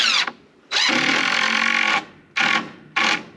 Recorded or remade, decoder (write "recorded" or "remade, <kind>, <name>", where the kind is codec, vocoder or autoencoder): recorded